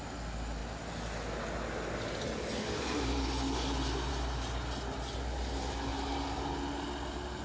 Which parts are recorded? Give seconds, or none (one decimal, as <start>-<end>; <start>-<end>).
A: 0.0-7.4